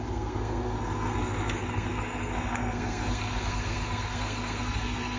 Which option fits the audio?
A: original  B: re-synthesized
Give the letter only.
B